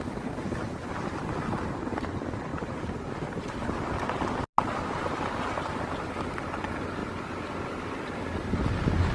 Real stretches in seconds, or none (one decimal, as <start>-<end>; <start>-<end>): 0.0-9.1